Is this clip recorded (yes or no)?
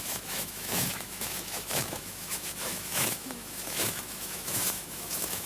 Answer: no